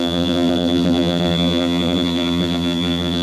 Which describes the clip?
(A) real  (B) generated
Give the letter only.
B